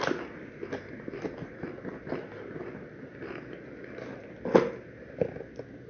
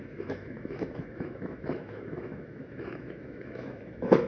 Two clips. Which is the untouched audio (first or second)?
first